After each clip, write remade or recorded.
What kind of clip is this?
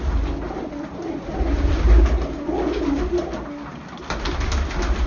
recorded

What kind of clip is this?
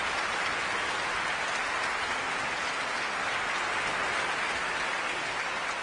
recorded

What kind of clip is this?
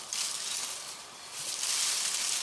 recorded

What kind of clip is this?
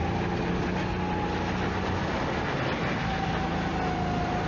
recorded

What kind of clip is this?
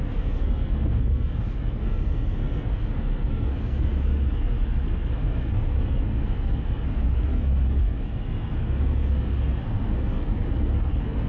remade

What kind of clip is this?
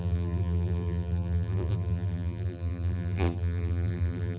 remade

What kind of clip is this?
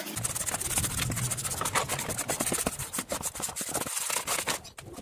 recorded